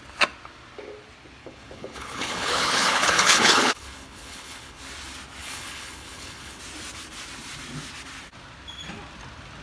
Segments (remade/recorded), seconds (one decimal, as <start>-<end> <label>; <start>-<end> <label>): 0.0-1.4 recorded; 1.4-4.8 remade; 4.8-5.4 recorded; 5.4-6.6 remade; 6.6-9.6 recorded